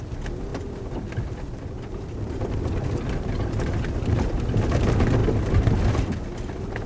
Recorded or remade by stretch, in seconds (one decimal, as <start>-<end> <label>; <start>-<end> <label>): 0.0-0.5 recorded; 0.5-4.4 remade; 4.4-6.9 recorded